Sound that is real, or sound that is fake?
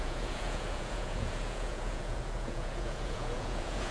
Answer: fake